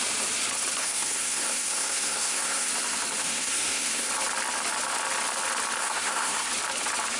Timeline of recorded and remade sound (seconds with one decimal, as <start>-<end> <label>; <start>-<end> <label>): 0.0-0.8 recorded; 0.8-2.7 remade; 2.7-3.2 recorded; 3.2-4.1 remade; 4.1-5.8 recorded; 5.8-6.5 remade; 6.5-7.2 recorded